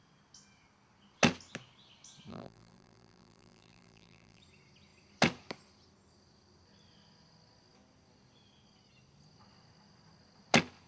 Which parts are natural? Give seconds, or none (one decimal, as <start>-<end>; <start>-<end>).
0.0-2.3; 4.4-10.9